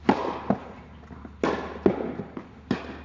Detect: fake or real real